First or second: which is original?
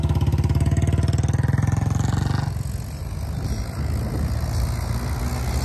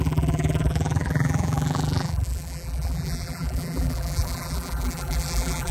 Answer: first